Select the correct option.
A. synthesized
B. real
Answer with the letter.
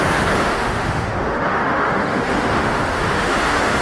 A